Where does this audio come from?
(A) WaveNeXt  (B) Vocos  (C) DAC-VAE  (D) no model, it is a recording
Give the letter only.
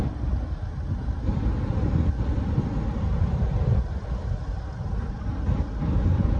D